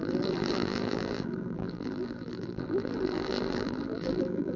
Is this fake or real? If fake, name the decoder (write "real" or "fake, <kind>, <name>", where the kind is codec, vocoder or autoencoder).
fake, vocoder, BigVGAN v2